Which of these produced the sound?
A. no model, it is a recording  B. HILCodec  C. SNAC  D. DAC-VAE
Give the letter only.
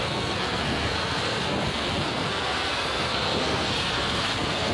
C